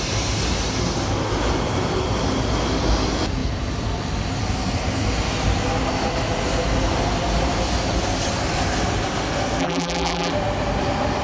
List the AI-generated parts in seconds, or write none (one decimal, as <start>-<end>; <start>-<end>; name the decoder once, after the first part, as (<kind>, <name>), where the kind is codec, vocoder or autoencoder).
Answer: 9.6-10.3 (vocoder, BigVGAN v2)

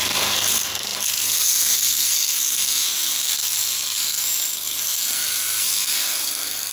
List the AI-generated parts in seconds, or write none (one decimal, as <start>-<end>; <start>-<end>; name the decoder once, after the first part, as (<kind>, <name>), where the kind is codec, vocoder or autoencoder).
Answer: 0.0-6.7 (codec, SNAC)

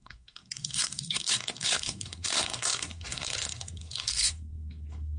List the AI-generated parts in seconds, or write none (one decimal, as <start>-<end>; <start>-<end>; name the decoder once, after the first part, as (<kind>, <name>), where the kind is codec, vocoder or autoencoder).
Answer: 0.0-5.2 (codec, SNAC)

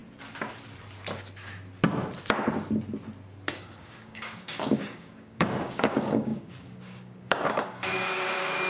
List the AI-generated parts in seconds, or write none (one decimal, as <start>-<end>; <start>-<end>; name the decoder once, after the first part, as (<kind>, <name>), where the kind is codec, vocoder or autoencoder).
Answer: 3.5-8.7 (codec, DAC)

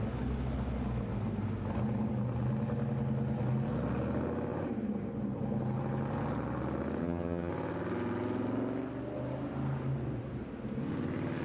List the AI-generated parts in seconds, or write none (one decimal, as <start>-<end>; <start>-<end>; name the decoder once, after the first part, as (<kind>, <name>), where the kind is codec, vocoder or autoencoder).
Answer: 7.0-7.5 (vocoder, HiFi-GAN)

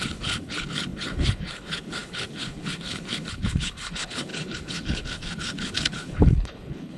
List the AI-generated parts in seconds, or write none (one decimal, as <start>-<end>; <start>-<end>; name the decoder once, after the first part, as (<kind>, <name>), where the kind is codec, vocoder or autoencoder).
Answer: 0.0-7.0 (codec, HILCodec)

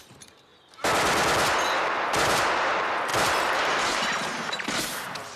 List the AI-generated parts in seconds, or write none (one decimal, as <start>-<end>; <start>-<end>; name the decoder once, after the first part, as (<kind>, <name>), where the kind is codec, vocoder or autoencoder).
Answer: 0.0-0.5 (vocoder, BigVGAN v2); 1.8-5.4